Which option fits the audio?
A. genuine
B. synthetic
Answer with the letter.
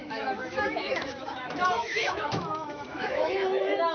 B